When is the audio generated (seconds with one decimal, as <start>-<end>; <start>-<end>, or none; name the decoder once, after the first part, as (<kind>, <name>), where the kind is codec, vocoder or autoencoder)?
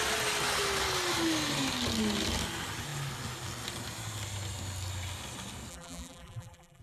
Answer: 5.7-6.8 (vocoder, BigVGAN v2)